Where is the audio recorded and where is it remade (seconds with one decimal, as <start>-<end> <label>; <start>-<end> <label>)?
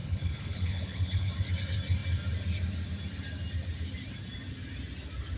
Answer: 0.0-1.3 remade; 1.3-5.4 recorded